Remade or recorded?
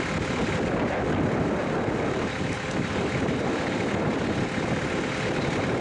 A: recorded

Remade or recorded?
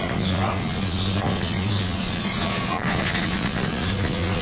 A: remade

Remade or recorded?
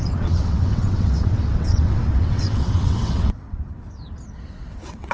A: remade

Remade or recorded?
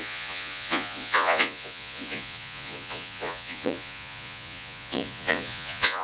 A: remade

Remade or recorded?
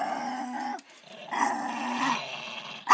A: recorded